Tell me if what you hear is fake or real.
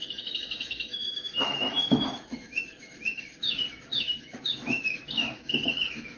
fake